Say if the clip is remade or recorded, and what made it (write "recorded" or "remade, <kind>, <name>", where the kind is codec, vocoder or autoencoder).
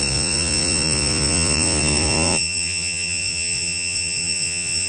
remade, vocoder, Vocos